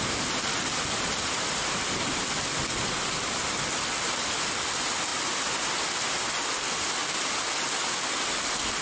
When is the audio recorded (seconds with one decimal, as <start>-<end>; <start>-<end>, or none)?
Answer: 0.0-8.8